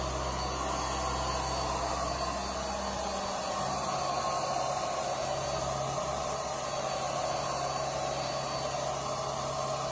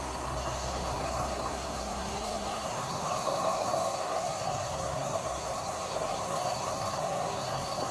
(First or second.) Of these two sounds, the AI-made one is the second